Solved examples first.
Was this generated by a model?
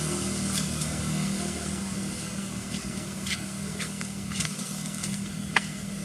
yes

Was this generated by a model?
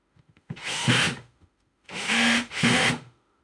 yes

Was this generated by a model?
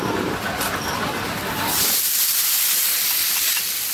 no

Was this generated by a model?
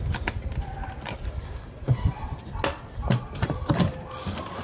no